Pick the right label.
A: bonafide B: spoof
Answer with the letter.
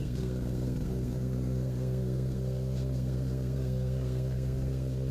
B